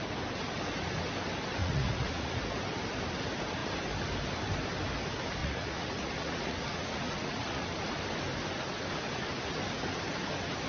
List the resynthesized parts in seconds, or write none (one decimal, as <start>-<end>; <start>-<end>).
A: 1.6-2.4; 5.4-8.0